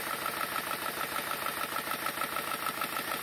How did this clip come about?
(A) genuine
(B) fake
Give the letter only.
A